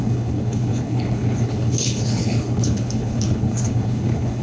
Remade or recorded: remade